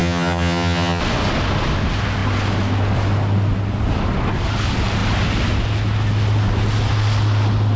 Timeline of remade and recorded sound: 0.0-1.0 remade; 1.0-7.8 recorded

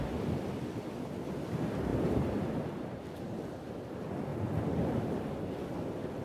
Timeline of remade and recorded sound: 0.0-1.9 recorded; 1.9-3.8 remade; 3.8-4.3 recorded; 4.3-5.4 remade; 5.4-6.2 recorded

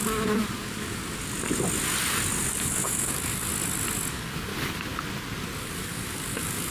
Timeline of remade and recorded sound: 0.0-1.0 remade; 1.0-2.5 recorded; 2.5-3.5 remade; 3.5-4.1 recorded; 4.1-4.5 remade; 4.5-5.6 recorded; 5.6-6.7 remade

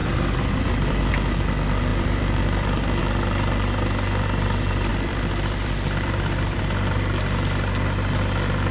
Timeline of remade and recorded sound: 0.0-1.1 remade; 1.1-1.9 recorded; 1.9-3.0 remade; 3.0-4.9 recorded; 4.9-6.6 remade; 6.6-8.7 recorded

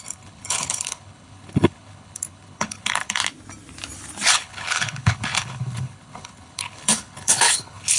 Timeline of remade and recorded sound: 0.0-3.2 remade; 3.2-4.3 recorded; 4.3-8.0 remade

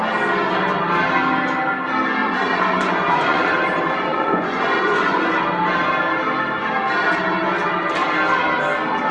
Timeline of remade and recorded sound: 0.0-2.2 recorded; 2.2-5.3 remade; 5.3-9.1 recorded

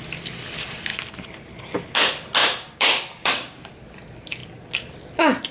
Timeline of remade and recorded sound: 0.0-2.4 recorded; 2.4-3.6 remade; 3.6-5.5 recorded

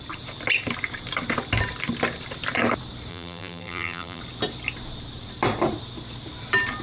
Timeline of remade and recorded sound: 0.0-3.1 recorded; 3.1-4.2 remade; 4.2-6.8 recorded